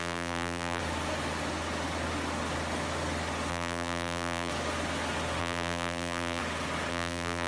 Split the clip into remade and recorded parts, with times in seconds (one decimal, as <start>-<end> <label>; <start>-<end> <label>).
0.0-0.8 remade; 0.8-3.5 recorded; 3.5-4.5 remade; 4.5-5.4 recorded; 5.4-6.4 remade; 6.4-6.9 recorded; 6.9-7.5 remade